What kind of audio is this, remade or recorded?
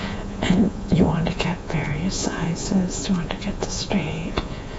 remade